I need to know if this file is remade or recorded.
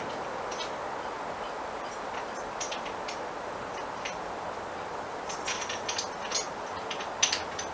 recorded